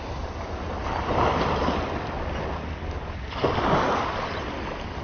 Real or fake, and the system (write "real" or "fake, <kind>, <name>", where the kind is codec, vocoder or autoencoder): real